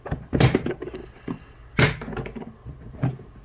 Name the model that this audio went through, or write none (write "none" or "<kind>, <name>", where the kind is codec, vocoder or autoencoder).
none